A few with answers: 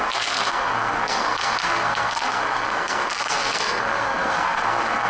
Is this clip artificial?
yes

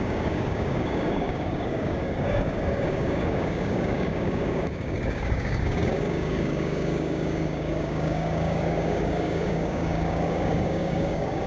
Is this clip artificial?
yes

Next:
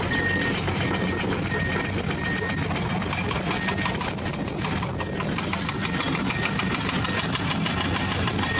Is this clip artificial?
no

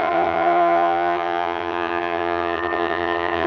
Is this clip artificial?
yes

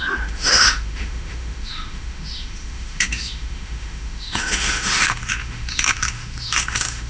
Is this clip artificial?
yes